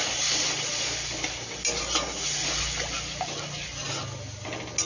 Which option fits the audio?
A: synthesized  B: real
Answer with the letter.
B